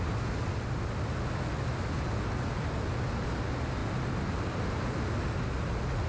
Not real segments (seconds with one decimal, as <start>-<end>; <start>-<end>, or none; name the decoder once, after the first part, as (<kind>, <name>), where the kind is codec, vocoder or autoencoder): none